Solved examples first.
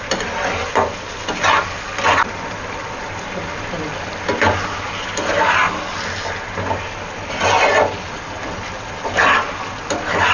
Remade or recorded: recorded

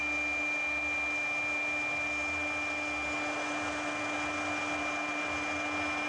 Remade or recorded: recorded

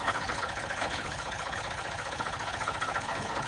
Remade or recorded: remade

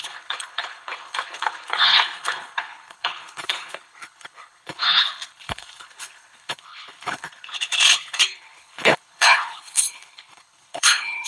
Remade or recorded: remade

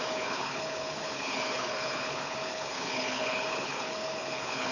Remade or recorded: remade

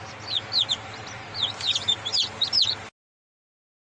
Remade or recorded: recorded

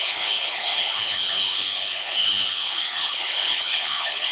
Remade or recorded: remade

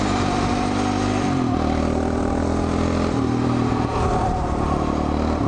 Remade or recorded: recorded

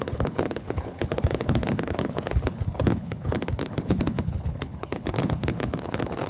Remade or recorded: remade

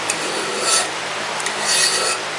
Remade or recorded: recorded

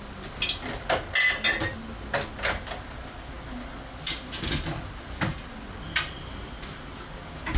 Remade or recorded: recorded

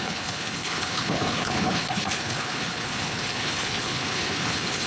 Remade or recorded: remade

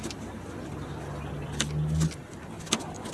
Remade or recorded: recorded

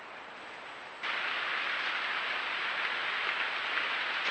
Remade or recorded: recorded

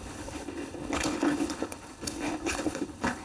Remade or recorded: remade